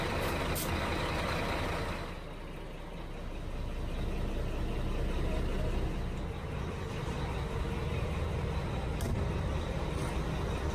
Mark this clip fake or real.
real